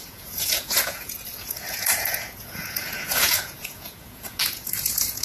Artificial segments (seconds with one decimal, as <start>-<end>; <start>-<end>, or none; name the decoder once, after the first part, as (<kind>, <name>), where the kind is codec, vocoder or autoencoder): 0.0-5.2 (vocoder, Vocos)